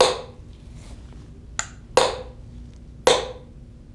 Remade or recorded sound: recorded